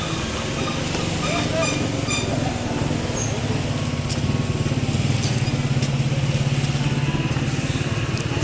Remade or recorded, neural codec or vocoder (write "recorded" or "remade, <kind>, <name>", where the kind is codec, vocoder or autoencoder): recorded